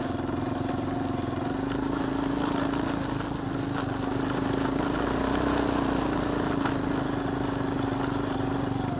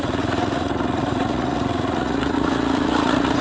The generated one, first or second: second